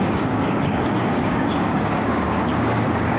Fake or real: fake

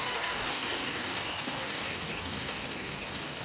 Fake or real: fake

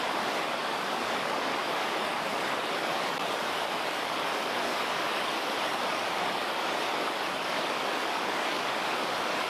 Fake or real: fake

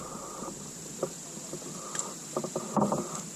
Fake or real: real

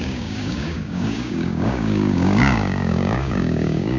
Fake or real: fake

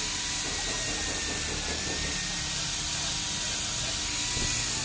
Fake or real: real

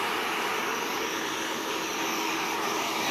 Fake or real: fake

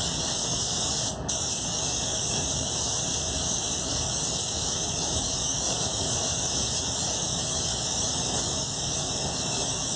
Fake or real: fake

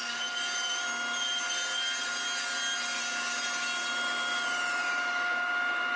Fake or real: real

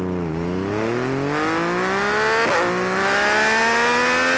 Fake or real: real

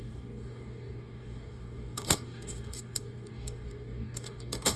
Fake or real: fake